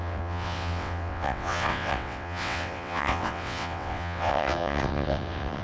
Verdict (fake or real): fake